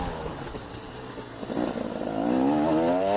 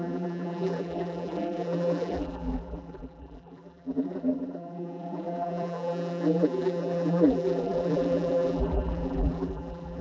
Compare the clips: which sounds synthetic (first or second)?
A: second